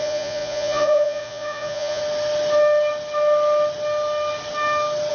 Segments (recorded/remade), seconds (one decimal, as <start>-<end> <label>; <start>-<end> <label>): 0.0-2.0 remade; 2.0-5.1 recorded